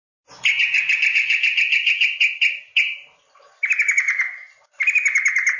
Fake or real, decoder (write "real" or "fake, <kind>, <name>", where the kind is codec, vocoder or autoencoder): real